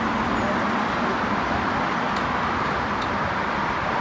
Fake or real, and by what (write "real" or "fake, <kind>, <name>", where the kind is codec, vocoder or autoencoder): real